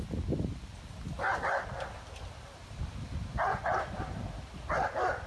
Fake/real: real